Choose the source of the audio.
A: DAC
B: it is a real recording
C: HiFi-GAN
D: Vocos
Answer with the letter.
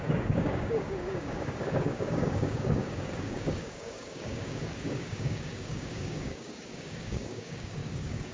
A